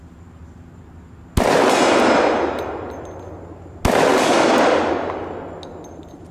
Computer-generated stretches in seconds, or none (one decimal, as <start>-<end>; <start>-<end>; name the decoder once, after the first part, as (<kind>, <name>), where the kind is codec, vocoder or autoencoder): 4.1-4.9 (codec, DAC)